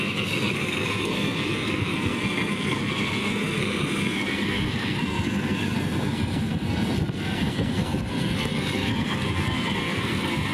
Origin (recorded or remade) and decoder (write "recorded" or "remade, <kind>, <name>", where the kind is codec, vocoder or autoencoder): remade, codec, SNAC